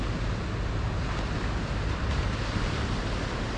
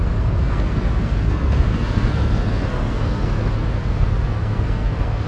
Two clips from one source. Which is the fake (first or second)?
second